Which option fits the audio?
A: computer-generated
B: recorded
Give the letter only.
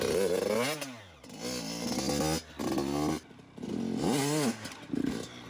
B